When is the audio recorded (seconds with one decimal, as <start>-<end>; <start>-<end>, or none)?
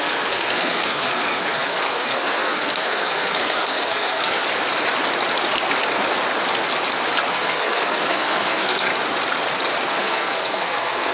4.4-7.3; 8.9-10.0